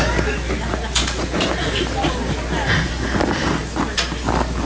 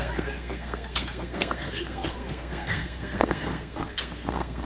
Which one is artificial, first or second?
second